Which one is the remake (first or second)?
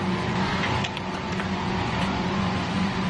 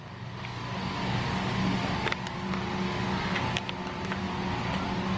first